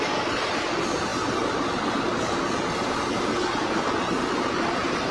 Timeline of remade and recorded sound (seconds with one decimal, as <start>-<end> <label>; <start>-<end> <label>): 0.0-5.1 recorded